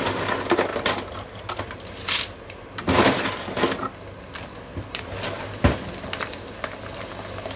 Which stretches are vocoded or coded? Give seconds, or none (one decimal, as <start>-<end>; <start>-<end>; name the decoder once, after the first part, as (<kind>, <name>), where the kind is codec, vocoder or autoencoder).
0.7-3.2 (vocoder, BigVGAN v2)